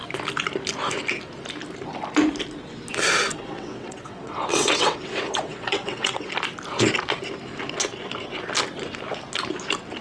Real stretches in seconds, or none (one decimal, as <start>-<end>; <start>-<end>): 0.0-3.3; 6.3-10.0